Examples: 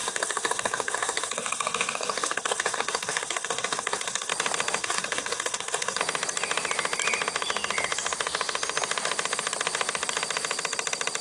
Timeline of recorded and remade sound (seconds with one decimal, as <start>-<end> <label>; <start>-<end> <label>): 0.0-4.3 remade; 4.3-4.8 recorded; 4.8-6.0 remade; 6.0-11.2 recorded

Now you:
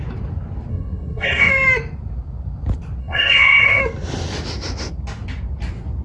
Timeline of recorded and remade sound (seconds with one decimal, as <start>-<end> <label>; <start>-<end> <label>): 0.0-0.7 recorded; 0.7-1.5 remade; 1.5-3.0 recorded; 3.0-3.8 remade; 3.8-6.0 recorded

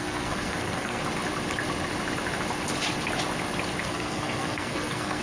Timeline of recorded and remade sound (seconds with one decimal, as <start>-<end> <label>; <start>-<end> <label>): 0.0-1.0 remade; 1.0-3.8 recorded; 3.8-5.2 remade

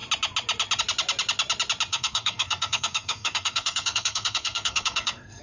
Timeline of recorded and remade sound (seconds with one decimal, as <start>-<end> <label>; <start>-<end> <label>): 0.0-1.9 recorded; 1.9-5.4 remade

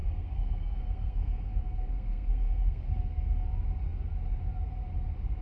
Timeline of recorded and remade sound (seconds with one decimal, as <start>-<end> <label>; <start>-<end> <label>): 0.0-3.2 remade; 3.2-5.4 recorded